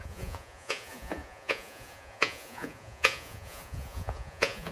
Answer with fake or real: fake